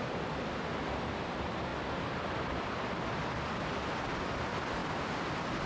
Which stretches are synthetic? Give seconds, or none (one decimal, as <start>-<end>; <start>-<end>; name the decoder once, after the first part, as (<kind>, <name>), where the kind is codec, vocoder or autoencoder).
none